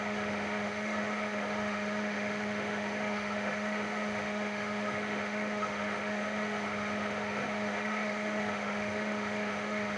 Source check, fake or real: fake